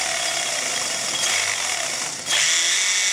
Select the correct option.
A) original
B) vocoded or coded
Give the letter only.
A